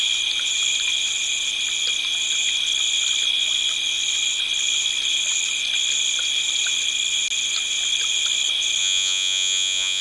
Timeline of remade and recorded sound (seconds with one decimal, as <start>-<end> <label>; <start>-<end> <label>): 0.0-8.8 recorded; 8.8-10.0 remade